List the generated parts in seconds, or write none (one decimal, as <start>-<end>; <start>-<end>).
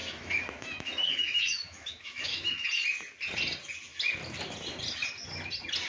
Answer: 0.0-2.7